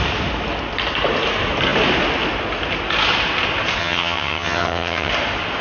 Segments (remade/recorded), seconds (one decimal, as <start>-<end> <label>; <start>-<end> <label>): 0.0-3.8 recorded; 3.8-5.1 remade; 5.1-5.6 recorded